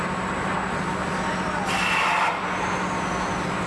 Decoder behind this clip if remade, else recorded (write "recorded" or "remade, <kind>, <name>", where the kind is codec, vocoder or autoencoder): recorded